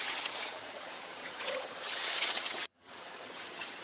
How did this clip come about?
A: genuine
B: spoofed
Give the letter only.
B